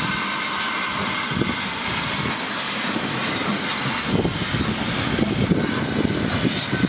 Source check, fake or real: real